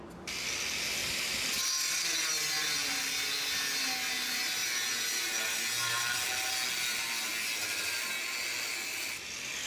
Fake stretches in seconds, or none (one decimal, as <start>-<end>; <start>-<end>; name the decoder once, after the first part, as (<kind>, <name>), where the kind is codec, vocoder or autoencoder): 2.8-3.4 (vocoder, BigVGAN v2)